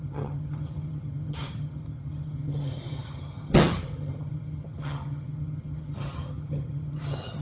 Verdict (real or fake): fake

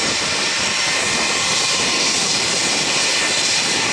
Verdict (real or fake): real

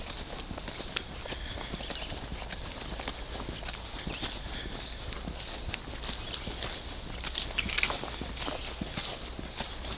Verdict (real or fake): real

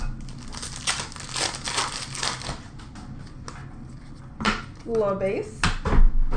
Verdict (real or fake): real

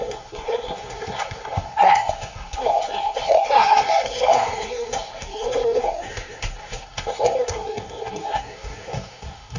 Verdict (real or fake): fake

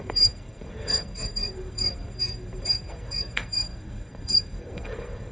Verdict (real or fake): fake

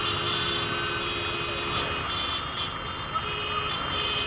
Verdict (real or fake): real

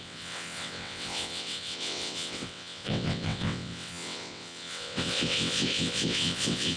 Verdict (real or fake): fake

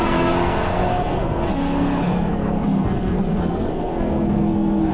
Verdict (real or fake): fake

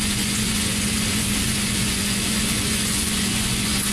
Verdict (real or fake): fake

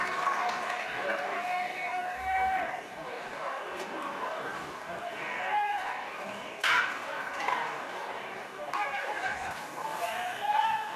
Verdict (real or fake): fake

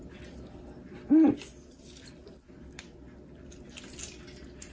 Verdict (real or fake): real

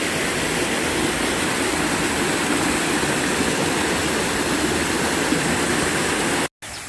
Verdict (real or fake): real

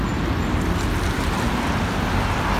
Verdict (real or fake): real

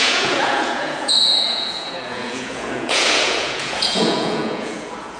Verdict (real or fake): fake